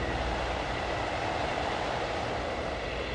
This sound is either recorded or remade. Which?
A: recorded